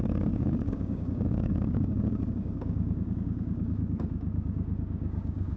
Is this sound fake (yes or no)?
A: yes